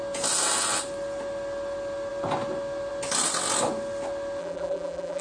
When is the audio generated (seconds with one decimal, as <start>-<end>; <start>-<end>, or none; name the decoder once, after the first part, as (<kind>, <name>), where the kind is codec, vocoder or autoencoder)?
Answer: 4.4-5.2 (vocoder, BigVGAN v2)